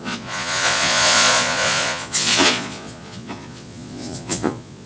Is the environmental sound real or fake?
fake